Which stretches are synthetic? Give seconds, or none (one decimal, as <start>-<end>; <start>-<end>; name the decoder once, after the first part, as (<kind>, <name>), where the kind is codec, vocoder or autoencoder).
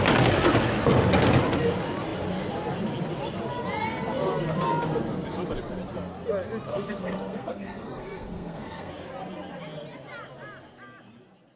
6.7-8.9 (codec, SNAC)